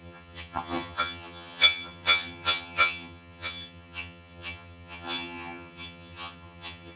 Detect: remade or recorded remade